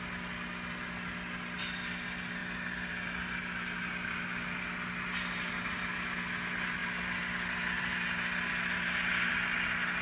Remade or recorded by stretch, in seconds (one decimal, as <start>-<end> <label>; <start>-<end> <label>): 0.0-10.0 recorded